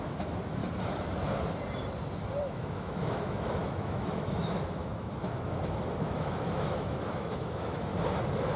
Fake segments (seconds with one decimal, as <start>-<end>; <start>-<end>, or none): 0.0-0.6; 2.4-7.9